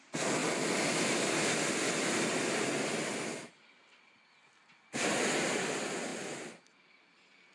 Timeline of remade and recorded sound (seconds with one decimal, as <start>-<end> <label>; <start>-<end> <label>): 0.0-7.5 recorded